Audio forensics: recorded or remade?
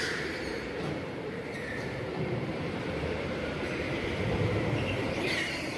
remade